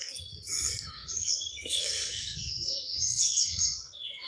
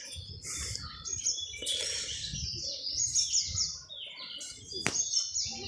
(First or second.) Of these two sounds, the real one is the second